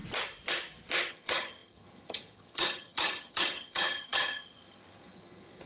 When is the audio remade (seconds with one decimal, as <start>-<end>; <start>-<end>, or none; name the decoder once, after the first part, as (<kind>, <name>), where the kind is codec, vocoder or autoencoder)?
1.1-5.7 (vocoder, HiFi-GAN)